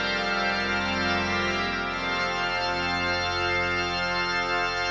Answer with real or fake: real